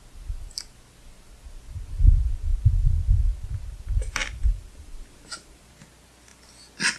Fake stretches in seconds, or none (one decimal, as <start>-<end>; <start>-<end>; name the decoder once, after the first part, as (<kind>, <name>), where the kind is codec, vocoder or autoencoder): 4.2-5.7 (vocoder, BigVGAN v2)